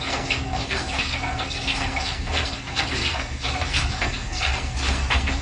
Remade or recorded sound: remade